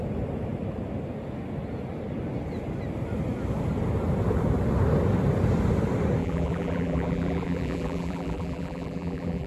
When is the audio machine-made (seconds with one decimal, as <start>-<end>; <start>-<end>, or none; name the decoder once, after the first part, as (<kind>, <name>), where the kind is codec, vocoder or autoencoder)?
6.2-9.5 (vocoder, BigVGAN v2)